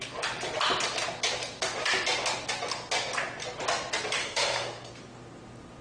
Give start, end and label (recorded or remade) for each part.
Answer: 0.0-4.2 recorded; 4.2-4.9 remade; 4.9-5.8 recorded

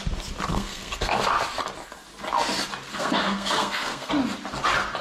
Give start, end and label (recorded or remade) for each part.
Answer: 0.0-0.5 recorded; 0.5-1.2 remade; 1.2-2.9 recorded; 2.9-4.1 remade; 4.1-5.0 recorded

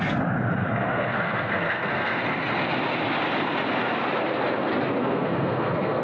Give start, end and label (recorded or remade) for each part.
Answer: 0.0-0.8 recorded; 0.8-2.2 remade; 2.2-5.0 recorded; 5.0-6.0 remade